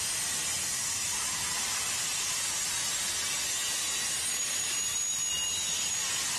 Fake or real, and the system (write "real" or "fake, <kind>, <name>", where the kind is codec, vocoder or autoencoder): real